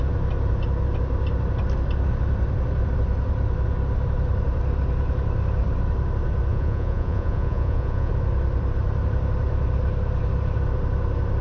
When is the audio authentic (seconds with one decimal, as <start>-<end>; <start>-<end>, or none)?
0.0-6.5; 8.1-11.4